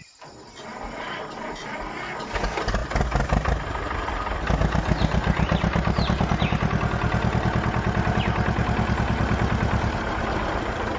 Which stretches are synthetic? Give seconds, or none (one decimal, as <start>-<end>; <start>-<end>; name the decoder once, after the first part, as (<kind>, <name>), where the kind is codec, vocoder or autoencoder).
none